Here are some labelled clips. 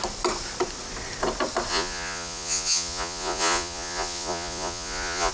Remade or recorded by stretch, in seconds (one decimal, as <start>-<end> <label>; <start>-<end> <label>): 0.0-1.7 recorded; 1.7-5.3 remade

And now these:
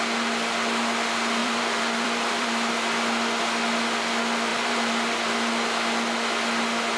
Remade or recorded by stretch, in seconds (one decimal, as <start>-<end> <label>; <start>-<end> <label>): 0.0-1.4 recorded; 1.4-2.7 remade; 2.7-4.5 recorded; 4.5-5.5 remade; 5.5-7.0 recorded

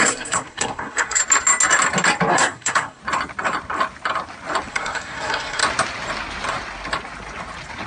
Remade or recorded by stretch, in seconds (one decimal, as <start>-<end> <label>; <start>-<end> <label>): 0.0-1.2 remade; 1.2-2.3 recorded; 2.3-3.0 remade; 3.0-4.7 recorded; 4.7-5.6 remade; 5.6-7.9 recorded

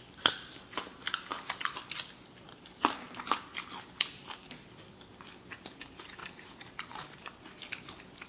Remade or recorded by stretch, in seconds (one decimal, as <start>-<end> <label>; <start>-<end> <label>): 0.0-6.2 recorded; 6.2-7.6 remade; 7.6-8.3 recorded